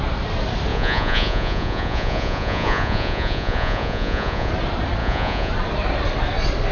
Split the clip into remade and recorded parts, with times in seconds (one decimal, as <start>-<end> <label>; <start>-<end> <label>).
0.0-0.7 recorded; 0.7-4.5 remade; 4.5-5.0 recorded; 5.0-5.5 remade; 5.5-6.7 recorded